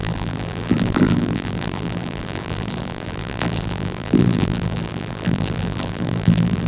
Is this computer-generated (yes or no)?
yes